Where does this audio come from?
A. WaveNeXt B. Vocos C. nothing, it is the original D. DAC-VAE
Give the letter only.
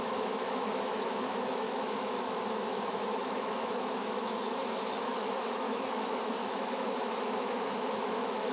D